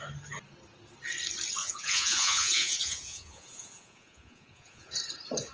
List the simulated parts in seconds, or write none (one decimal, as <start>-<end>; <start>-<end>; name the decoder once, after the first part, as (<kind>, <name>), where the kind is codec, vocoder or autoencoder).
1.6-4.9 (vocoder, Vocos)